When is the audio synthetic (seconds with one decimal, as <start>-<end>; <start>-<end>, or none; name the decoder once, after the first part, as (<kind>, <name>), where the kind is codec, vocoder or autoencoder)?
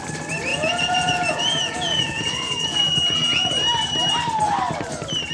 0.5-3.5 (vocoder, Vocos)